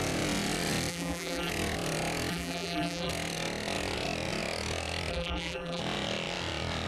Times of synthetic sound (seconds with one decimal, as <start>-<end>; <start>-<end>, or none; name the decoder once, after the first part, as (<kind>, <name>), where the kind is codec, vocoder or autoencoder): 0.9-1.5 (vocoder, BigVGAN v2); 2.3-3.1; 5.1-5.8